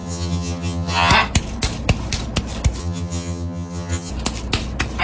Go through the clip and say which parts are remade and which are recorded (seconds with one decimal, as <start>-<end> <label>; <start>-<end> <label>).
0.0-1.1 remade; 1.1-2.8 recorded; 2.8-4.1 remade; 4.1-5.0 recorded

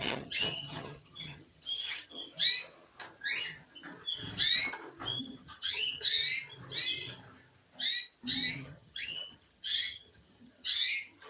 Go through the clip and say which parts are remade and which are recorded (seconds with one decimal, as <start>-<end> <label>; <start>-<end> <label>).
0.0-2.2 remade; 2.2-5.2 recorded; 5.2-6.2 remade; 6.2-8.5 recorded; 8.5-11.3 remade

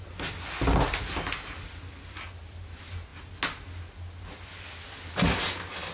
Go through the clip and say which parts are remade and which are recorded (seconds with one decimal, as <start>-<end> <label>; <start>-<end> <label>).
0.0-5.9 recorded

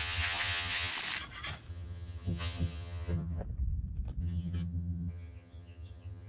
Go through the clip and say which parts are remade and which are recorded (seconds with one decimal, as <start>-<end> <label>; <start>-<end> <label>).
0.0-0.9 remade; 0.9-1.7 recorded; 1.7-3.4 remade; 3.4-4.2 recorded; 4.2-6.3 remade

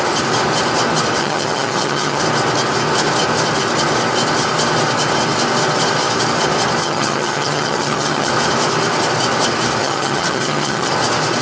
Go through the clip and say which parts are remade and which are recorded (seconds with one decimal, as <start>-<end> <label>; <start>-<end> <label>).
0.0-1.2 recorded; 1.2-2.2 remade; 2.2-6.8 recorded; 6.8-8.3 remade; 8.3-9.8 recorded; 9.8-10.9 remade; 10.9-11.4 recorded

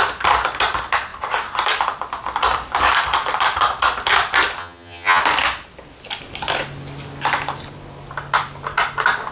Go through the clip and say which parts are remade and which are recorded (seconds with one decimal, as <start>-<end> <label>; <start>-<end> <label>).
0.0-4.6 recorded; 4.6-5.2 remade; 5.2-9.3 recorded

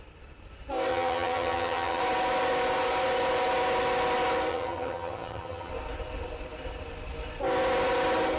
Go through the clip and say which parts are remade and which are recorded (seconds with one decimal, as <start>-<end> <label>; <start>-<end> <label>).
0.0-0.9 recorded; 0.9-2.0 remade; 2.0-4.5 recorded; 4.5-5.7 remade; 5.7-8.4 recorded

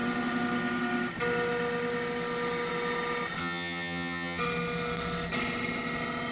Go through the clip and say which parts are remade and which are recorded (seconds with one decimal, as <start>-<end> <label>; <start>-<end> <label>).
0.0-3.4 recorded; 3.4-4.4 remade; 4.4-6.3 recorded